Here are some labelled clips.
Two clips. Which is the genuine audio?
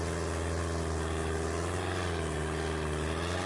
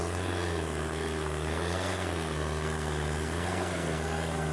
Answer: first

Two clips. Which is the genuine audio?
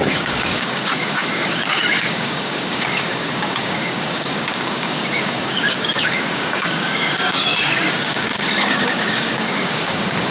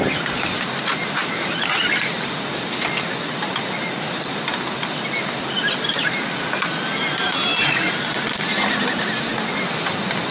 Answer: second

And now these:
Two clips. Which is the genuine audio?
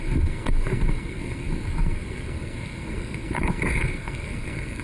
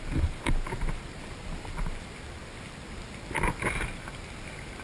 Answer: second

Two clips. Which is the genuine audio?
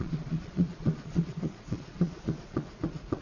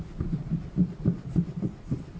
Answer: second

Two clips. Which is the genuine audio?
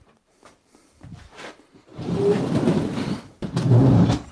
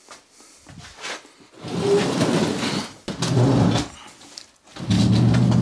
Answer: second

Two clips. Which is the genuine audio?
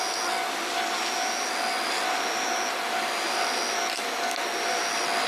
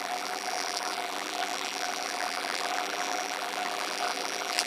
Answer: first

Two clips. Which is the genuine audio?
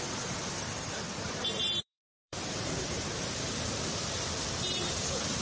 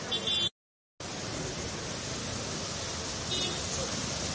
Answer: second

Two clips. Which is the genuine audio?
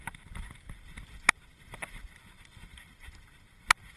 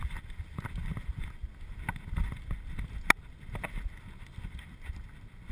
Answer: second